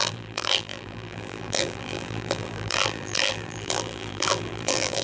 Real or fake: fake